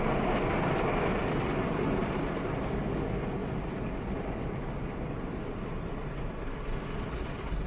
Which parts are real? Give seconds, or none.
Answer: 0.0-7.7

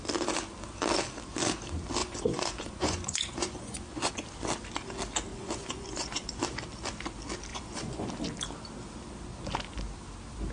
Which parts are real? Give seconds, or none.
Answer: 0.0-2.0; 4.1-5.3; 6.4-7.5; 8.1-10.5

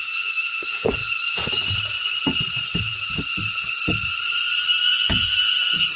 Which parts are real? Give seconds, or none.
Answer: 1.0-2.8; 3.3-4.9

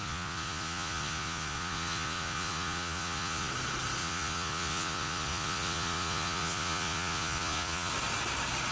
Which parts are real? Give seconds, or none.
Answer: 3.5-4.0; 7.9-8.7

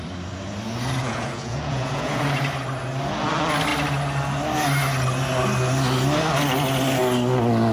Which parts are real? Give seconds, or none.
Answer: 0.0-1.0; 2.4-7.7